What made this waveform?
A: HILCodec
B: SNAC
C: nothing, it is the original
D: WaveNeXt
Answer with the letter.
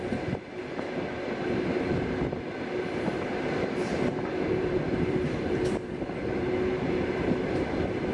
C